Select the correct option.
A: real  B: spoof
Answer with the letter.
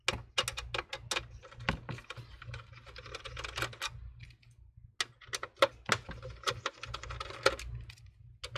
A